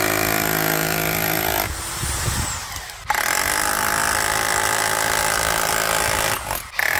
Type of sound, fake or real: real